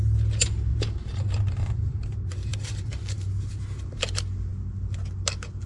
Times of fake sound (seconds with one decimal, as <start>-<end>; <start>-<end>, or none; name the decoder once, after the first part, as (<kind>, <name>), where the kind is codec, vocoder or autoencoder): 0.7-4.0 (vocoder, BigVGAN v2)